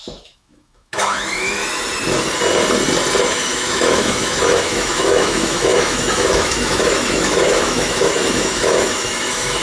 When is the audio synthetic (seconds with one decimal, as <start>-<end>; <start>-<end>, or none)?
0.0-1.6; 3.2-9.6